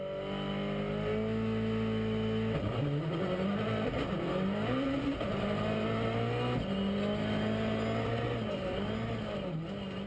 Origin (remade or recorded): recorded